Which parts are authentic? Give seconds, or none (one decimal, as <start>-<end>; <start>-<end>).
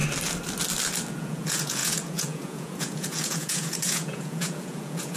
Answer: 0.0-1.1